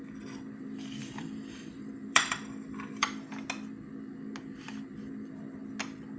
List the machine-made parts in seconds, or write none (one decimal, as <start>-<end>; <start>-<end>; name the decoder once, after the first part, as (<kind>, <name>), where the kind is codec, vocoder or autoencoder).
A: 1.0-3.3 (vocoder, BigVGAN v2)